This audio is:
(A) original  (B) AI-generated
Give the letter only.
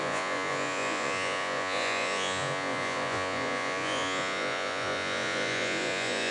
B